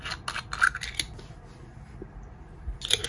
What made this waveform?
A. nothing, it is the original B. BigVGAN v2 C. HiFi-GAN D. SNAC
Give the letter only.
A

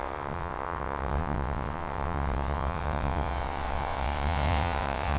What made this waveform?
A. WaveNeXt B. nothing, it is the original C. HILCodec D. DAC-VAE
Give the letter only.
A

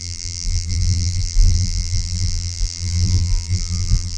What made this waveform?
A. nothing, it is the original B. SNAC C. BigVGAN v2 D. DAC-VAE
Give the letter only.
C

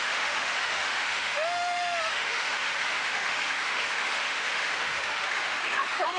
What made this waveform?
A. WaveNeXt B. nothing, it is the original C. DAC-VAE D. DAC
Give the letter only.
C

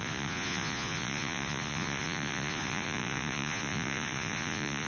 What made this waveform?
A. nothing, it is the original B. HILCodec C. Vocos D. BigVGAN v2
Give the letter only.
C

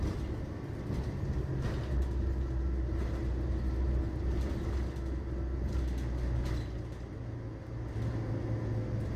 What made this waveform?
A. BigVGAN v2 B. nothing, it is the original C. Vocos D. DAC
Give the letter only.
B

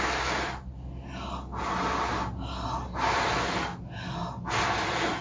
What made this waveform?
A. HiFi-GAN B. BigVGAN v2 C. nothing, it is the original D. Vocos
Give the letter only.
C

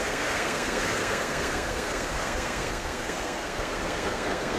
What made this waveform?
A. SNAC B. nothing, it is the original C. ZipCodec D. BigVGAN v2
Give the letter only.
A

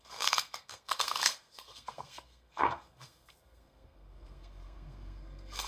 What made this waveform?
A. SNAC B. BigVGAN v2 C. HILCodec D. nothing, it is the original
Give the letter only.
A